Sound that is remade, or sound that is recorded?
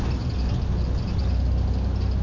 recorded